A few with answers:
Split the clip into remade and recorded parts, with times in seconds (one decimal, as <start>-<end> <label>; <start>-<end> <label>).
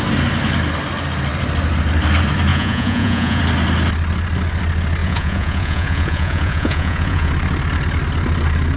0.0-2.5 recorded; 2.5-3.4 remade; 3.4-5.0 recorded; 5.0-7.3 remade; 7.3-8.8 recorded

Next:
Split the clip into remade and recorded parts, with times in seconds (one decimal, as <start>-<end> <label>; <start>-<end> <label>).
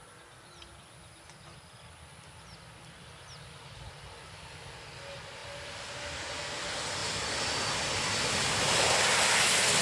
0.0-9.8 recorded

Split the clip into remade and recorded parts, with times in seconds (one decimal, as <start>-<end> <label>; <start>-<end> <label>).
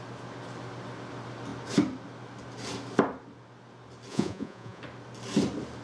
0.0-4.1 recorded; 4.1-4.8 remade; 4.8-5.8 recorded